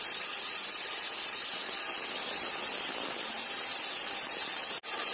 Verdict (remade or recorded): recorded